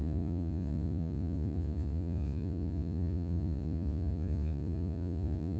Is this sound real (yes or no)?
no